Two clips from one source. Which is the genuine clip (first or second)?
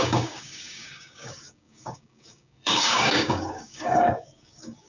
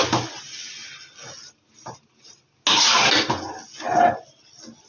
second